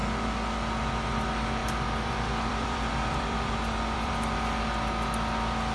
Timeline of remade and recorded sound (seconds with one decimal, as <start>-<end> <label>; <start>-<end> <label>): 0.0-1.6 recorded; 1.6-4.1 remade; 4.1-5.7 recorded